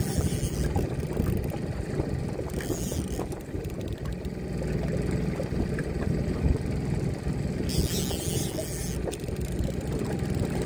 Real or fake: real